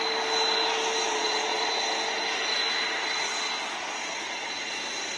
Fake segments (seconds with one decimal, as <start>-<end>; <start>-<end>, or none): 1.1-1.7; 3.6-4.8